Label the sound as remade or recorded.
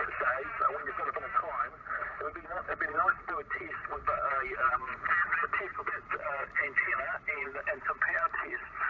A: recorded